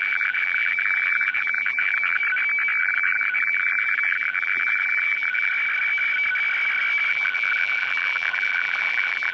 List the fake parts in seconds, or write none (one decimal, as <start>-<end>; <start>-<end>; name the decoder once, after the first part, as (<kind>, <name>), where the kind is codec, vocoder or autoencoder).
0.0-2.2 (vocoder, BigVGAN v2); 2.8-5.5; 7.1-9.3